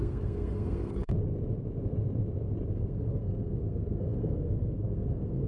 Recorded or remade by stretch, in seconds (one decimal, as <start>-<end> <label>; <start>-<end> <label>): 0.0-1.1 remade; 1.1-2.7 recorded; 2.7-5.5 remade